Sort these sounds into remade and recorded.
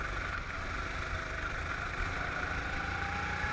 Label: recorded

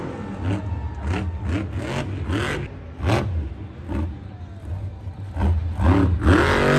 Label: recorded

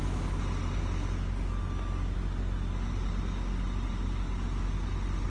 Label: recorded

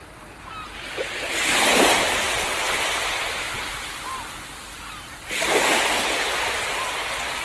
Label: recorded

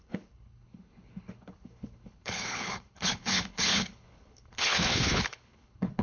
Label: remade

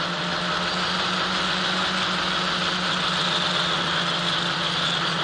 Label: recorded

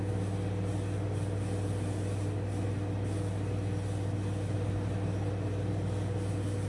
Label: recorded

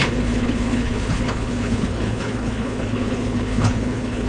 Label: remade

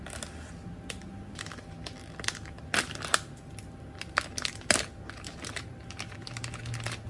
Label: recorded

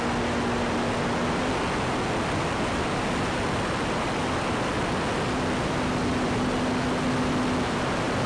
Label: recorded